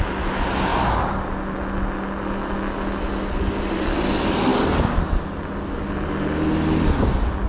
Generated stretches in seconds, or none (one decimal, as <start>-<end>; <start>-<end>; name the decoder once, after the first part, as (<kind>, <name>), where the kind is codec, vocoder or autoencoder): none